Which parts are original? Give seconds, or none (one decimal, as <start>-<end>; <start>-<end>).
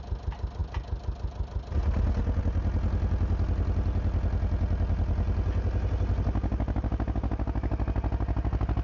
0.0-8.8